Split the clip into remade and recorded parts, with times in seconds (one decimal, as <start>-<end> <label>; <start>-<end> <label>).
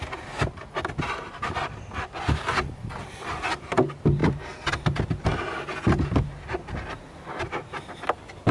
0.0-8.5 recorded